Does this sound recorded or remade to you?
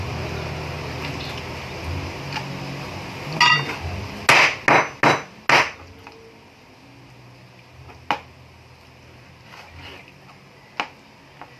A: recorded